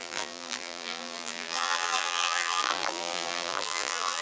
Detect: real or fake fake